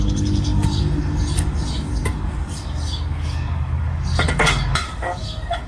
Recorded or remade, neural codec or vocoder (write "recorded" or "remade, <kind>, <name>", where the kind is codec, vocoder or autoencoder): remade, codec, DAC